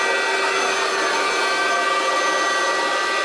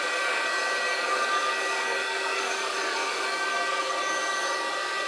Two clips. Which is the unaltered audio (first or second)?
first